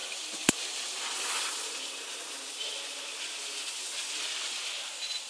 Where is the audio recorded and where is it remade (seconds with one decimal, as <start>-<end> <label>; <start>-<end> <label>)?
0.0-5.3 recorded